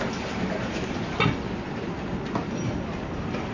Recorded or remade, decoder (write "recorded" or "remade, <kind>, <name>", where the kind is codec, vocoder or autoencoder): recorded